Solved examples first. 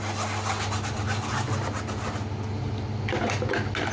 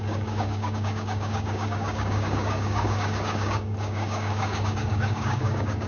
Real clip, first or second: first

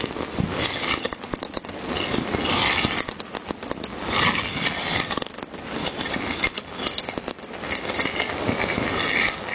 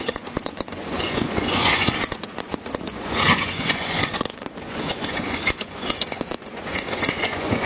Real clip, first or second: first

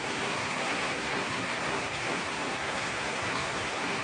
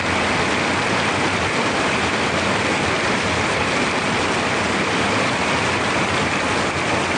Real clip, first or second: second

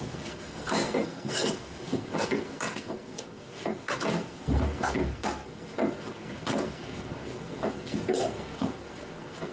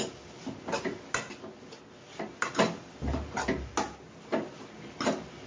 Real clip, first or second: second